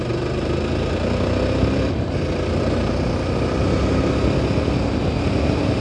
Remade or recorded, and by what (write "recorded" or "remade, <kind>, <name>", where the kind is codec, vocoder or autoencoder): recorded